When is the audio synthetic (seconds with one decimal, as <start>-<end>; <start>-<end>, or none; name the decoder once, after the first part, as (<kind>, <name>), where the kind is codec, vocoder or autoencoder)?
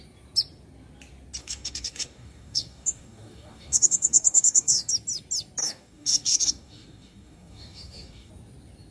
1.4-4.9 (codec, DAC); 5.6-8.3